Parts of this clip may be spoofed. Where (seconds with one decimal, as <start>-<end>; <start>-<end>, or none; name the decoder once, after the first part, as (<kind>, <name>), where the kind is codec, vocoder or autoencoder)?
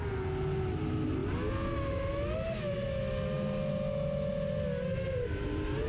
4.9-5.9 (vocoder, BigVGAN v2)